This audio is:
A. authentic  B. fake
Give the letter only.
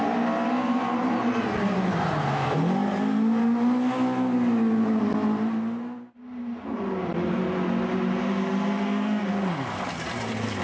A